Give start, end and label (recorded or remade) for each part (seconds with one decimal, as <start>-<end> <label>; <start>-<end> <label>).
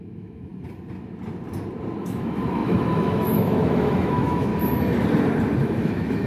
0.0-0.5 remade; 0.5-2.0 recorded; 2.0-4.5 remade; 4.5-5.6 recorded; 5.6-6.3 remade